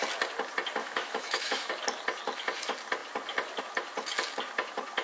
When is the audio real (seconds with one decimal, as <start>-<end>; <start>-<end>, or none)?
0.0-0.8; 1.7-5.0